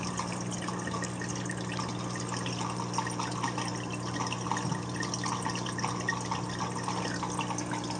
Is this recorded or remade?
recorded